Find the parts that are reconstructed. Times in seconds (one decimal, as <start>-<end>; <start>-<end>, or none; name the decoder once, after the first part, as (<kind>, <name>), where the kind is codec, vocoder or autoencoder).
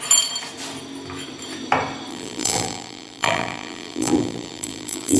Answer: 2.1-5.2 (vocoder, BigVGAN v2)